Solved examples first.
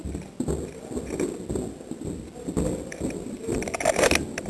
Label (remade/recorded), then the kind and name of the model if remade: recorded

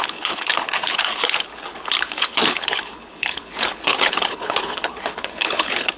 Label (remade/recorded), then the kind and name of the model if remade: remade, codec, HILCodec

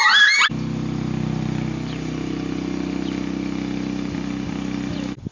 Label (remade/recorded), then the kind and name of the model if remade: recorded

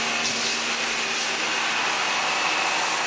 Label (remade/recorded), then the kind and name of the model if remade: recorded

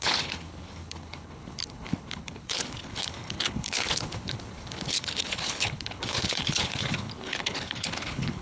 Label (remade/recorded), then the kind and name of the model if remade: remade, codec, HILCodec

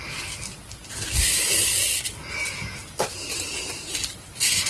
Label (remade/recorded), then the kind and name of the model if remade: recorded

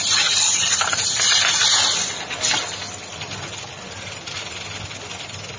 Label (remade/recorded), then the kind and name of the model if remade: recorded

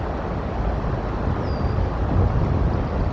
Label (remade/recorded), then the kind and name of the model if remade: recorded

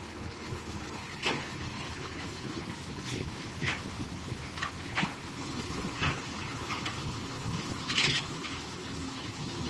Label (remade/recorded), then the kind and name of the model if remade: remade, codec, HILCodec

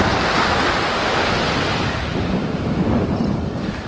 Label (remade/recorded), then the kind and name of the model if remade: recorded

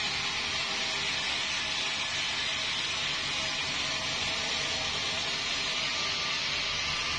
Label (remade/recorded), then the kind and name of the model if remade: recorded